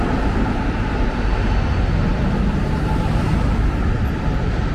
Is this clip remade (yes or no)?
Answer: no